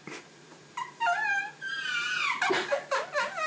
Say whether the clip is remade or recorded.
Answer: remade